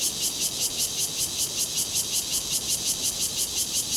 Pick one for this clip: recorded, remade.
remade